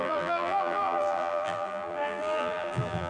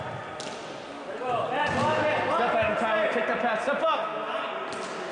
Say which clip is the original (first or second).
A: second